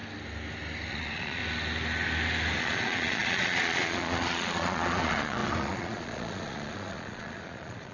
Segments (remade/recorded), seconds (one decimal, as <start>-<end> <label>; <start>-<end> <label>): 0.0-0.9 recorded; 0.9-1.4 remade; 1.4-2.6 recorded; 2.6-7.9 remade

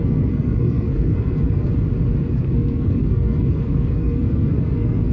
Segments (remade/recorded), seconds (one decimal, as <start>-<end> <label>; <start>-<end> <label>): 0.0-1.7 remade; 1.7-2.3 recorded; 2.3-5.1 remade

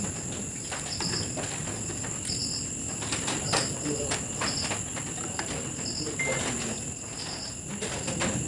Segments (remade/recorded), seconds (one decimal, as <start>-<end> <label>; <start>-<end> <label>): 0.0-8.5 recorded

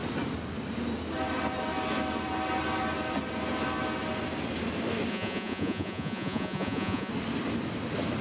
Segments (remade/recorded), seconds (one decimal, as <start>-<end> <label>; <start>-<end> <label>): 0.0-5.1 recorded; 5.1-7.1 remade; 7.1-8.2 recorded

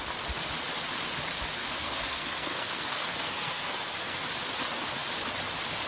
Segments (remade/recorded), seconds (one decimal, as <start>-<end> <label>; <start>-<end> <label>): 0.0-1.6 recorded; 1.6-4.2 remade; 4.2-5.9 recorded

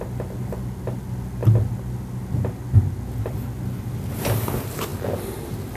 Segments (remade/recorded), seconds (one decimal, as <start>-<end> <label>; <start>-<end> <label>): 0.0-5.8 recorded

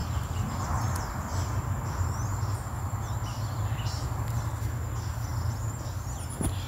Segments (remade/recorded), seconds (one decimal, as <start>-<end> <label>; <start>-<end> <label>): 0.0-3.3 recorded; 3.3-4.4 remade; 4.4-5.3 recorded; 5.3-6.3 remade; 6.3-6.7 recorded